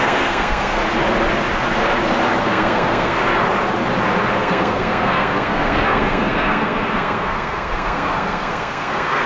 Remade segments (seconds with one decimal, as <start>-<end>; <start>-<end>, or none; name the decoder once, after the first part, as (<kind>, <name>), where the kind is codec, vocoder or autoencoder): 0.0-0.8 (codec, SNAC); 2.4-3.2; 4.3-9.3